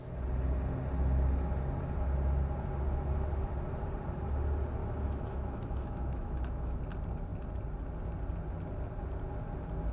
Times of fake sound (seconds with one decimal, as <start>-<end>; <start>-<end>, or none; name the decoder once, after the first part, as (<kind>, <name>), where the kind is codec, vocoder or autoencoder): 4.8-6.8 (autoencoder, DAC-VAE)